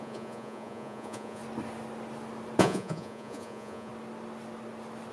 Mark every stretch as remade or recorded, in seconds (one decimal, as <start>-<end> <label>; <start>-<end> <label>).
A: 0.0-1.4 remade; 1.4-2.6 recorded; 2.6-3.9 remade; 3.9-5.1 recorded